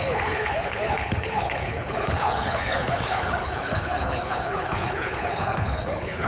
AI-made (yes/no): yes